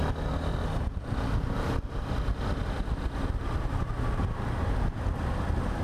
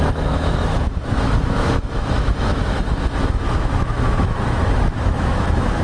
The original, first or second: first